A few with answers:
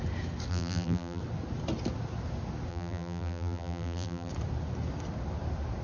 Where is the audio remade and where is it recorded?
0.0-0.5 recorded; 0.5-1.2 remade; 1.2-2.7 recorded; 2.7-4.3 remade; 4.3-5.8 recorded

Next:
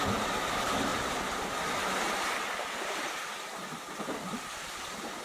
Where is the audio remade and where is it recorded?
0.0-5.2 recorded

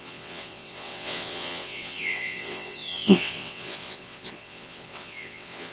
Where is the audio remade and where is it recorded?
0.0-5.7 remade